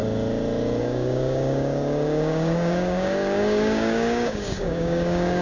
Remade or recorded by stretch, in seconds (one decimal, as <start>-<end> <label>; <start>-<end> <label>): 0.0-0.8 recorded; 0.8-5.4 remade